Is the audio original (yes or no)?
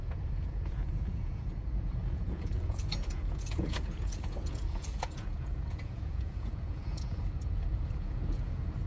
no